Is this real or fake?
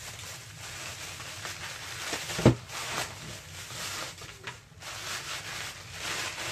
real